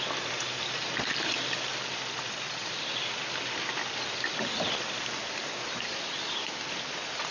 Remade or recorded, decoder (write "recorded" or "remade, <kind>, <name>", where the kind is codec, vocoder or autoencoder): recorded